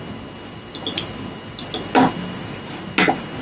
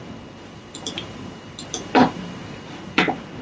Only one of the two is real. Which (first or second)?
first